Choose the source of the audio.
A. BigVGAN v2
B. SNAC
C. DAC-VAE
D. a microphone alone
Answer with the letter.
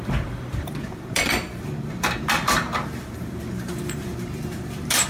A